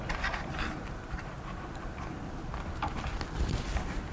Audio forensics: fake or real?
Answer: fake